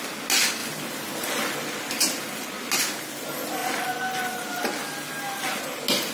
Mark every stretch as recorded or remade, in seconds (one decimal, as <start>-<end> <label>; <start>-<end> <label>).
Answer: 0.0-6.1 recorded

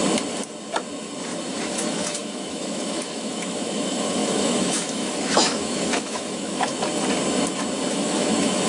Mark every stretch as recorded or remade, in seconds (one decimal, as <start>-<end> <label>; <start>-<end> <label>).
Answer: 0.0-1.5 recorded; 1.5-6.7 remade; 6.7-7.9 recorded; 7.9-8.7 remade